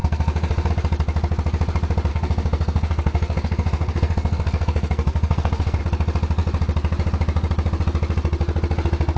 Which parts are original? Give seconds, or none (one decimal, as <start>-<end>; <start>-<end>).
0.7-2.1; 5.8-9.2